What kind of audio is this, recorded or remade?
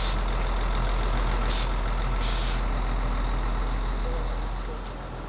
recorded